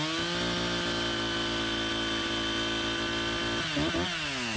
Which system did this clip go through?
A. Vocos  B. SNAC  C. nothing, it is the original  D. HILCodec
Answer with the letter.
C